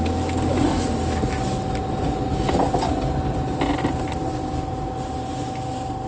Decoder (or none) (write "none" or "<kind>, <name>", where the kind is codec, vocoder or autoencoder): none